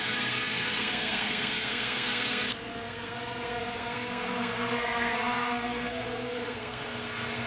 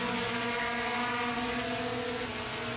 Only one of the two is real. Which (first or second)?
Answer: second